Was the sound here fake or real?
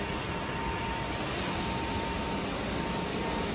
real